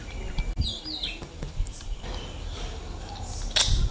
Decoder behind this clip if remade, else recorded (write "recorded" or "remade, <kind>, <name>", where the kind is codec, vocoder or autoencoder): recorded